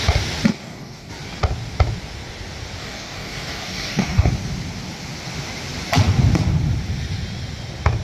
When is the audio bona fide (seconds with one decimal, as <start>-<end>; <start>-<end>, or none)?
0.0-0.5; 1.1-2.8; 4.3-8.0

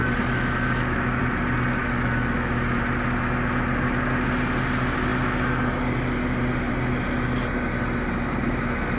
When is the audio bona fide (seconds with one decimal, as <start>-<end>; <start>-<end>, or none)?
1.2-1.8; 2.8-9.0

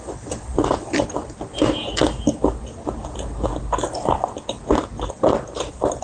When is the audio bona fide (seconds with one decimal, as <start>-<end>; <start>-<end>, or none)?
0.0-6.0

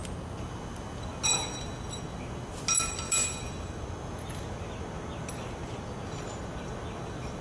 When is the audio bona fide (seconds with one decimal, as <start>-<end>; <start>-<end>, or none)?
0.0-7.4

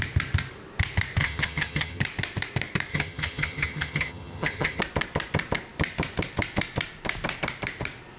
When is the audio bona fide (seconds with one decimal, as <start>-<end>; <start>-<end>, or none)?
0.0-1.2; 2.0-2.9; 4.8-8.2

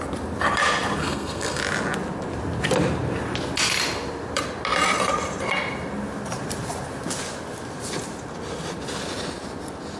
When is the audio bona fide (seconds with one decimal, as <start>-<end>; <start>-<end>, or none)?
0.0-1.0; 1.6-10.0

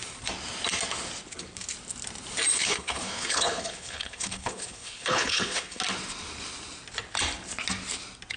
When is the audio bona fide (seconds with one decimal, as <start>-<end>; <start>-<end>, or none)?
0.0-2.5; 5.8-8.4